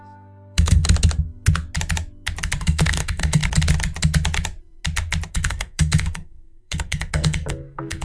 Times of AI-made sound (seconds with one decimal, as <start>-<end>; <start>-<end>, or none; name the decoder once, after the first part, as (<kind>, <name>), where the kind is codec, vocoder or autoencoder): 0.0-0.8 (codec, SNAC); 2.6-3.4; 5.3-8.0